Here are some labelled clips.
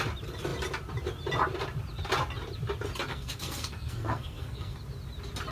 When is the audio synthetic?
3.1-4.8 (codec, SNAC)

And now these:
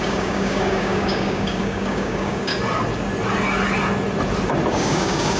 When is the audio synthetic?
0.0-2.5 (codec, DAC); 4.7-5.4